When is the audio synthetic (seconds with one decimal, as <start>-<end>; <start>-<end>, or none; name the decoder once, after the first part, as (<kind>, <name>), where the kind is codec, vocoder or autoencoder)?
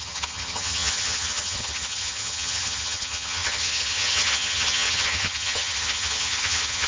0.0-6.9 (vocoder, HiFi-GAN)